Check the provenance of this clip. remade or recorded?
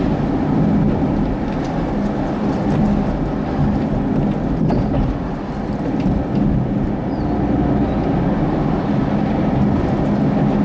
recorded